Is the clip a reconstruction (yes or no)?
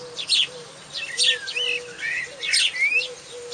no